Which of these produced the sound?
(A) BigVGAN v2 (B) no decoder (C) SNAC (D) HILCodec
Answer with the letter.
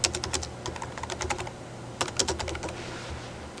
B